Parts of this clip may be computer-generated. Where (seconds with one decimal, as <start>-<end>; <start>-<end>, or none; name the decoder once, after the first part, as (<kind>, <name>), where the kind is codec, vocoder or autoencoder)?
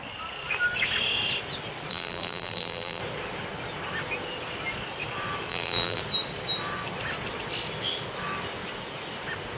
1.9-3.0 (vocoder, BigVGAN v2); 5.5-6.0